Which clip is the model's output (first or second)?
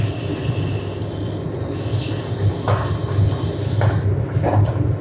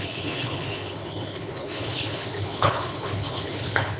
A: second